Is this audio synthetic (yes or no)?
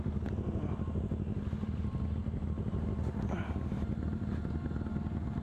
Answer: no